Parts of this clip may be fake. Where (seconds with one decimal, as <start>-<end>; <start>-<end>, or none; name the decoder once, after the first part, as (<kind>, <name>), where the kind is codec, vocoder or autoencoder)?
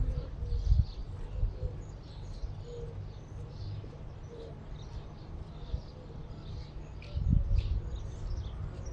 none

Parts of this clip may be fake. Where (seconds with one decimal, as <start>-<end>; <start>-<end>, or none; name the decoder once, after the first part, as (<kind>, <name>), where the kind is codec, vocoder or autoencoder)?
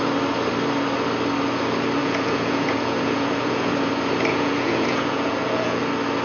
2.0-3.9 (vocoder, Vocos); 4.3-5.8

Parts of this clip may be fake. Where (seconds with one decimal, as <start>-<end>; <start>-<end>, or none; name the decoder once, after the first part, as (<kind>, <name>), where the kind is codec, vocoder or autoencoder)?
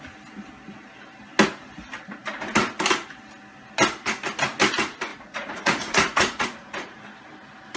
5.1-7.0 (vocoder, Vocos)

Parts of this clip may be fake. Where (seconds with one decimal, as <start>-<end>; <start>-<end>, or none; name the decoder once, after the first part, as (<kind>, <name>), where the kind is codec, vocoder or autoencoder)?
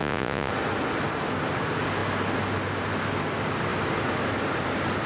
0.0-0.5 (vocoder, Vocos)